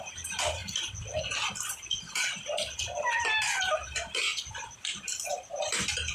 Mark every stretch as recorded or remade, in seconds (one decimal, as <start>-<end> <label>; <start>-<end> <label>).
0.0-6.1 recorded